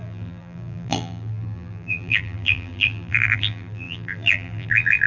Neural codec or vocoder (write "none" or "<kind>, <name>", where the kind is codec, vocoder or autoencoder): vocoder, BigVGAN v2